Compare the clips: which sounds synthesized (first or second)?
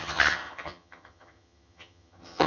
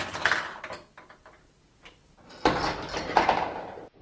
first